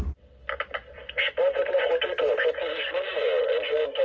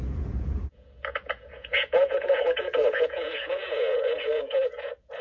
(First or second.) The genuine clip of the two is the first